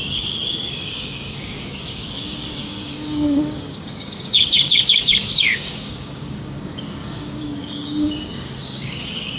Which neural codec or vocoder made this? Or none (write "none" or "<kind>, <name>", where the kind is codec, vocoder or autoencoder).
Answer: codec, DAC